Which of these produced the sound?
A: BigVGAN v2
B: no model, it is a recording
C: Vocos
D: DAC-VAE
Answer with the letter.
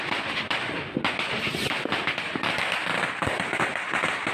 B